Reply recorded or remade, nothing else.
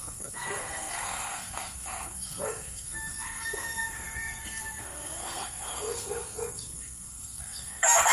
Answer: remade